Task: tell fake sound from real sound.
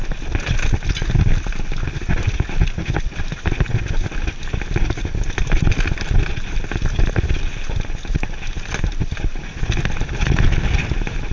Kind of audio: real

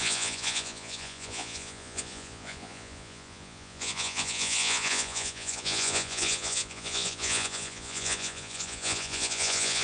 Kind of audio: fake